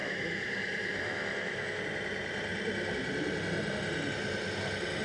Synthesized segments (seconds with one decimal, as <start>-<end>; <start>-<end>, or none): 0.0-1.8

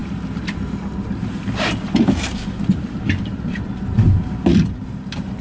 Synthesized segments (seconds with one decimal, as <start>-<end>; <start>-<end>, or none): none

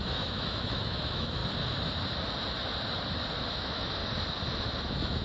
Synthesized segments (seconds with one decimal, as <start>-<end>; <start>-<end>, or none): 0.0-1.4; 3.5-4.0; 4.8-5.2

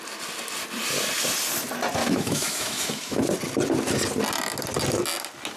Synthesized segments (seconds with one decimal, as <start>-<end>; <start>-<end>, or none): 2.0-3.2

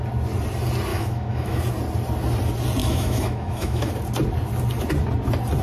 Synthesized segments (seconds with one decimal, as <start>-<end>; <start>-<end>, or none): 0.9-1.6; 2.8-3.9

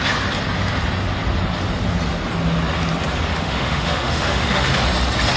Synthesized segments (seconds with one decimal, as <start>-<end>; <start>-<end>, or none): 3.3-4.8

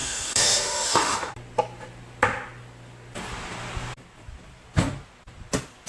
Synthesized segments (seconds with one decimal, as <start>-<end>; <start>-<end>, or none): 0.0-1.3